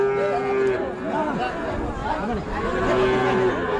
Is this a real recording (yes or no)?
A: yes